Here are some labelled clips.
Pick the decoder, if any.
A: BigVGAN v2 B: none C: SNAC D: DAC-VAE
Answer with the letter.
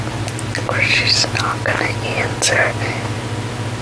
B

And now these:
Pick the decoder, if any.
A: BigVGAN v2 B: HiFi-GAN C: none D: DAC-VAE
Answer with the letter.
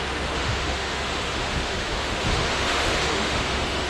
D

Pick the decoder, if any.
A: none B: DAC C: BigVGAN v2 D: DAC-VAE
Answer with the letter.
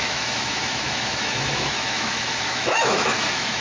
D